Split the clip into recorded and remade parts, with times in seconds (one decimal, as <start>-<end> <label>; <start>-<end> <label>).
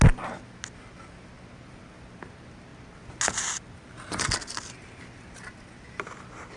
0.0-6.6 recorded